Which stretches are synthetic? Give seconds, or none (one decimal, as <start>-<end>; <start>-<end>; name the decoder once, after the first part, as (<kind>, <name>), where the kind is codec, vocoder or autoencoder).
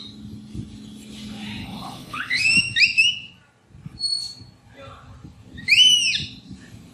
1.6-2.4 (codec, HILCodec)